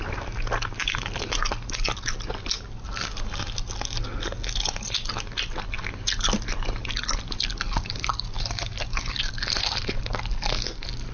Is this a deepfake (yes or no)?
no